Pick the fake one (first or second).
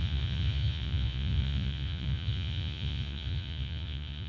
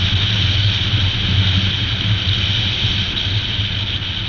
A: first